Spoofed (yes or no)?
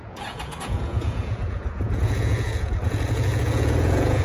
yes